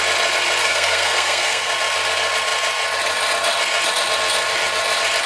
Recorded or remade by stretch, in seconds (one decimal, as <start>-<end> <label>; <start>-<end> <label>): 0.0-0.6 recorded; 0.6-1.7 remade; 1.7-5.3 recorded